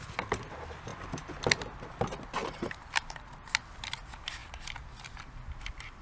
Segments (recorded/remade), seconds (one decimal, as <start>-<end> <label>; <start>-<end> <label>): 0.0-2.4 recorded; 2.4-3.5 remade; 3.5-6.0 recorded